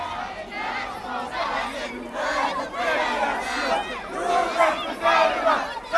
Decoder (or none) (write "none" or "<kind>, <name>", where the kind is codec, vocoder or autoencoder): none